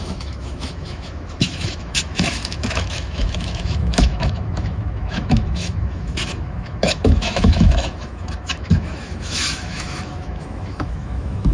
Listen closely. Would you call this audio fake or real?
fake